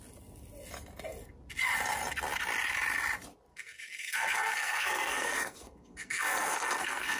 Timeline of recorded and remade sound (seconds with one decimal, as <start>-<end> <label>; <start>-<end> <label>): 0.0-3.5 recorded; 3.5-7.2 remade